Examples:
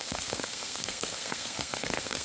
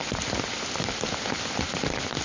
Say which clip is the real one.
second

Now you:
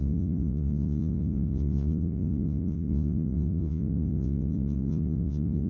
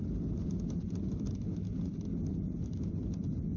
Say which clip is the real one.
second